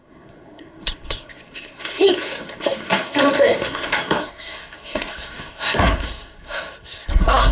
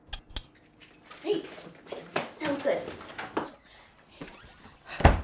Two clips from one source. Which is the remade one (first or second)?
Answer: first